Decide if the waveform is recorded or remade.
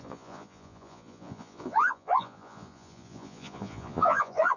remade